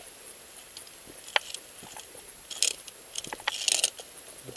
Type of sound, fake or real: real